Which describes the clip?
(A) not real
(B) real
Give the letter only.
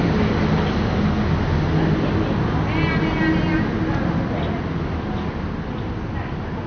B